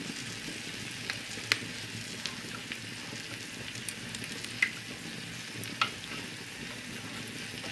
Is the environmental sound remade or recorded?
recorded